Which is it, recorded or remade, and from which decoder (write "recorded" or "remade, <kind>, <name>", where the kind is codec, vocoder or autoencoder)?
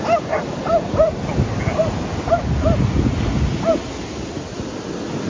recorded